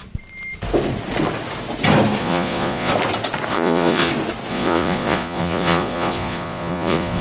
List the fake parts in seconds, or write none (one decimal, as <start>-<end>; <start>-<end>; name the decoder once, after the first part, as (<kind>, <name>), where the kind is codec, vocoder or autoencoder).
2.2-2.9 (vocoder, Vocos); 3.5-4.1; 4.5-7.2